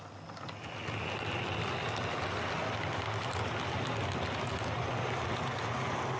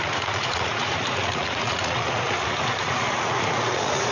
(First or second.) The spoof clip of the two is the second